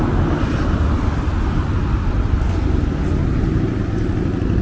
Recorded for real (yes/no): yes